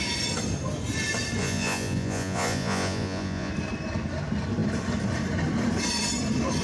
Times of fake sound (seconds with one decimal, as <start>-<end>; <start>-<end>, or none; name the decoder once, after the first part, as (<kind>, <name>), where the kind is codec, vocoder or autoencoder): 1.4-3.5 (vocoder, Vocos)

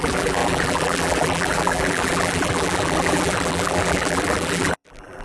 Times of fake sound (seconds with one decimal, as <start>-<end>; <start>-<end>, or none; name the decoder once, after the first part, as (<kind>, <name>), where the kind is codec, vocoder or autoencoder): 0.0-5.2 (vocoder, BigVGAN v2)